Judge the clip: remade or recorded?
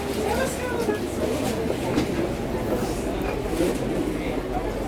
recorded